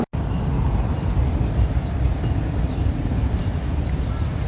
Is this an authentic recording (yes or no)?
yes